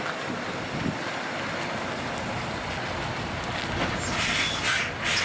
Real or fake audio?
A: real